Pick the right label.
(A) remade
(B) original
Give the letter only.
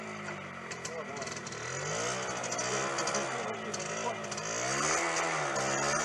B